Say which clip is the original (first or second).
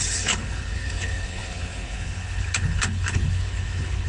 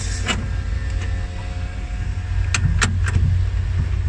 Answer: second